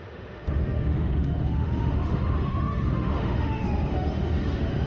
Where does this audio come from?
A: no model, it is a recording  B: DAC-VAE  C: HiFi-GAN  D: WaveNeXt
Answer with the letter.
B